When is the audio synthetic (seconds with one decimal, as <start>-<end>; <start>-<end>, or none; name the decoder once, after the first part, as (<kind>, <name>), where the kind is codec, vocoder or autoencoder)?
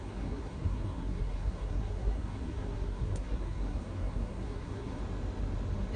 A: 0.0-5.0 (codec, SNAC)